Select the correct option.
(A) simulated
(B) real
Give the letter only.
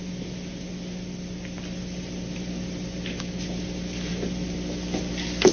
B